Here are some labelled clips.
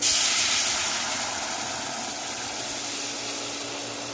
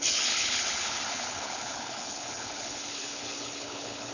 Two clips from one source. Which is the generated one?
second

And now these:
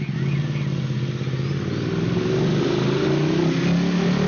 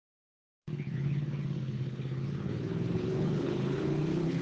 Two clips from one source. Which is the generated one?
second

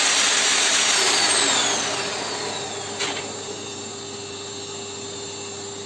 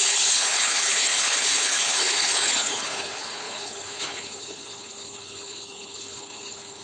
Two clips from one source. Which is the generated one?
second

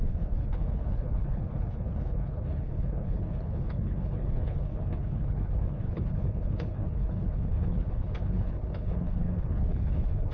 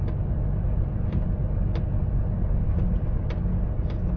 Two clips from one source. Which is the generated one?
first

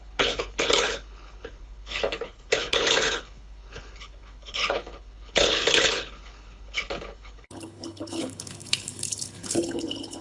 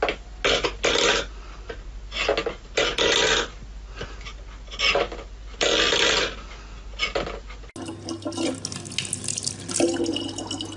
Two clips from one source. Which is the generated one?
first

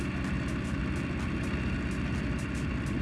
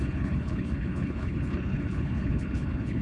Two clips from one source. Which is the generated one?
second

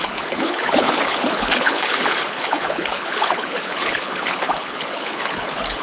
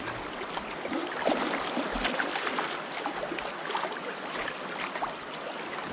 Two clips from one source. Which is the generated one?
first